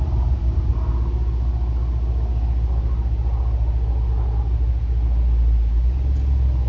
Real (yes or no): yes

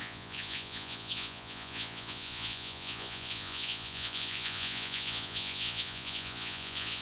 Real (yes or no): no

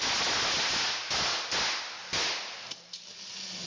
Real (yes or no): yes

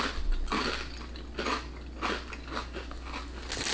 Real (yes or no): yes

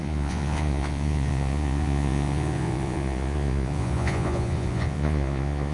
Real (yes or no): no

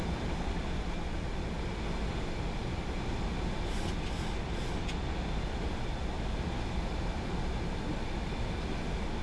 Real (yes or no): yes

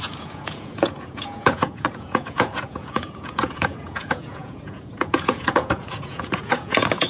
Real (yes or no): no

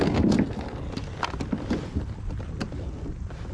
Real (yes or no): yes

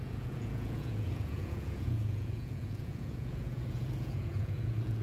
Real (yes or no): no